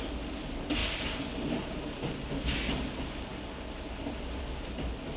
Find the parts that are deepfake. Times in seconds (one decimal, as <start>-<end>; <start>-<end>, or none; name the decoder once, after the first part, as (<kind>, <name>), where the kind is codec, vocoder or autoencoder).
none